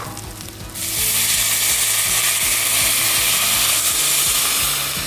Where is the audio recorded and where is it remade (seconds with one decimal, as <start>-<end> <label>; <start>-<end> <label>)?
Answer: 0.0-5.1 recorded